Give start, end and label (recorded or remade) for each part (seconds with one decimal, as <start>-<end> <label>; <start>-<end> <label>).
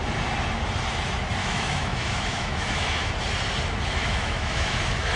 0.0-1.4 recorded; 1.4-3.1 remade; 3.1-4.0 recorded; 4.0-5.2 remade